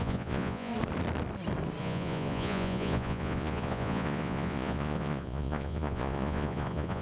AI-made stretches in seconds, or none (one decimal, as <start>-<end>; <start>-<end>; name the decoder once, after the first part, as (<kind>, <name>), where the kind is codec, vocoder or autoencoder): 0.0-0.7 (vocoder, Vocos); 1.8-7.0